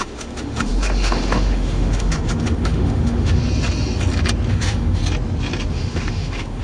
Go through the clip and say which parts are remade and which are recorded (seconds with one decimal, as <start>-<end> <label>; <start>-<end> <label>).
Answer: 0.0-3.4 remade; 3.4-4.5 recorded; 4.5-5.0 remade; 5.0-5.7 recorded; 5.7-6.6 remade